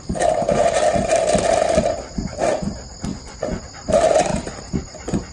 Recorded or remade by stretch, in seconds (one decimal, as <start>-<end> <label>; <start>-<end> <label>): 0.0-3.1 recorded; 3.1-3.6 remade; 3.6-5.3 recorded